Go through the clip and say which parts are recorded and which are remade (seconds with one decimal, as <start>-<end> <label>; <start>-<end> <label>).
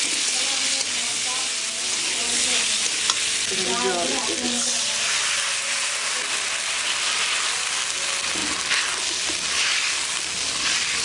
0.0-11.0 recorded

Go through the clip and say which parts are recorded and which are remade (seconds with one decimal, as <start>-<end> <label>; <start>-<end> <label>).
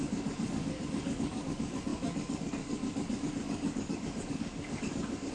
0.0-5.3 remade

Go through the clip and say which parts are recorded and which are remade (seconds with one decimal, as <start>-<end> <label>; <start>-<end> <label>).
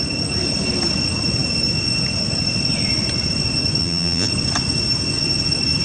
0.0-3.8 recorded; 3.8-4.3 remade; 4.3-5.8 recorded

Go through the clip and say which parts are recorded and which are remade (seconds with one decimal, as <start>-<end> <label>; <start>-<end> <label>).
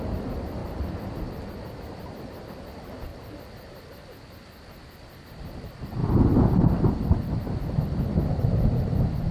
0.0-0.6 remade; 0.6-2.4 recorded; 2.4-6.0 remade; 6.0-6.9 recorded; 6.9-9.3 remade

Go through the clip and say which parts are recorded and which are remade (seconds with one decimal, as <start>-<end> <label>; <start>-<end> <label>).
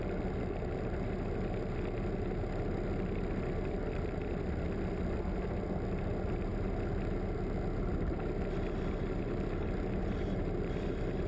0.0-11.3 recorded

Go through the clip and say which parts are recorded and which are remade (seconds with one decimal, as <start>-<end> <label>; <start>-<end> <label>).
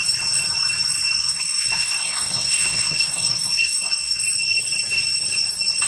0.0-1.2 recorded; 1.2-4.2 remade; 4.2-5.9 recorded